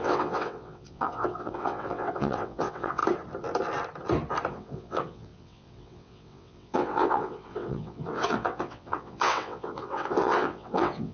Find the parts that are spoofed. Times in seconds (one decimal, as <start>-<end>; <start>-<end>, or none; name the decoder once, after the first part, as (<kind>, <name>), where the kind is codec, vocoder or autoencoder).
0.0-3.0 (vocoder, WaveNeXt); 4.5-11.1